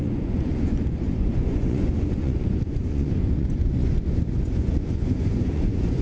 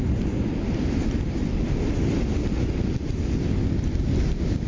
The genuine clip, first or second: second